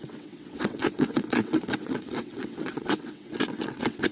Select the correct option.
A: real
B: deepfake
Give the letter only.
B